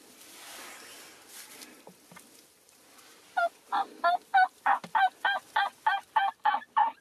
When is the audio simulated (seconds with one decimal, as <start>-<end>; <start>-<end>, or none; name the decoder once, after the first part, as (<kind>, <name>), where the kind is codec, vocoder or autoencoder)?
none